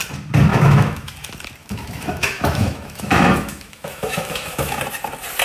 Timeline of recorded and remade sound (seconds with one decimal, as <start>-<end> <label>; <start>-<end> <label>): 0.0-0.5 recorded; 0.5-1.1 remade; 1.1-1.6 recorded; 1.6-4.8 remade; 4.8-5.4 recorded